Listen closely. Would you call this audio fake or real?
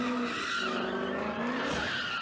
real